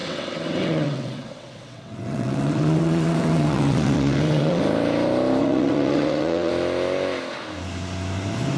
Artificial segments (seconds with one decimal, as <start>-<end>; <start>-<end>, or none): 0.0-4.6; 5.4-6.5